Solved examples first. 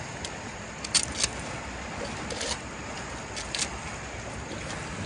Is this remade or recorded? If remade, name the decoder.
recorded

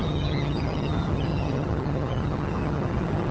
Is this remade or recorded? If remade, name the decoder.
remade, vocoder, HiFi-GAN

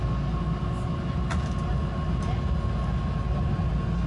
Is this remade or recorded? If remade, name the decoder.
recorded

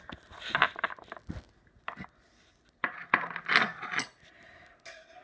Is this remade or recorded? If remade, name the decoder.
recorded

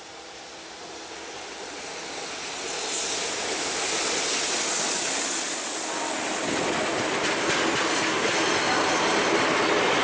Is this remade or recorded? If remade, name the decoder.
recorded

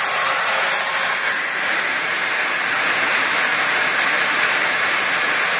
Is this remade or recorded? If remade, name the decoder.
remade, vocoder, BigVGAN v2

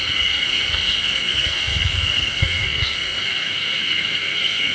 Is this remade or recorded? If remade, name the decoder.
remade, codec, SNAC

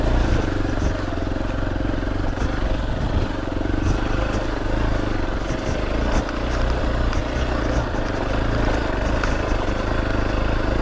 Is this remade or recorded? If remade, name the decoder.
recorded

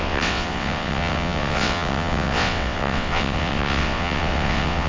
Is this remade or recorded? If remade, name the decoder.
remade, vocoder, WaveNeXt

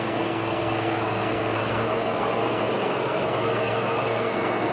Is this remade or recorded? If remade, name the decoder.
remade, codec, SNAC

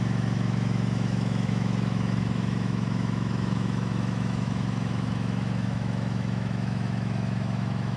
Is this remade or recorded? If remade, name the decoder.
remade, autoencoder, DAC-VAE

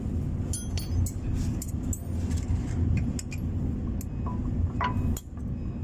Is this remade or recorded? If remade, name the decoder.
recorded